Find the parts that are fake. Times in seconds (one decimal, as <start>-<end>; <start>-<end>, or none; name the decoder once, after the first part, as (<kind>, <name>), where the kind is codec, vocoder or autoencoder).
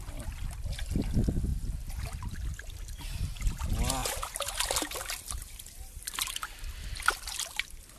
none